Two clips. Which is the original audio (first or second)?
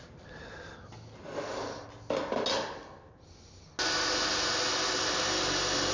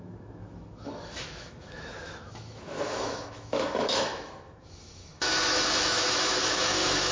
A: first